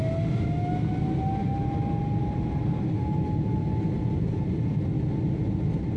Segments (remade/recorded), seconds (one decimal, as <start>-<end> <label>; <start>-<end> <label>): 0.0-2.2 recorded; 2.2-3.6 remade; 3.6-6.0 recorded